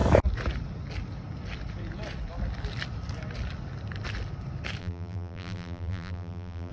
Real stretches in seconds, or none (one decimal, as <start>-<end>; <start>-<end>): 0.0-4.8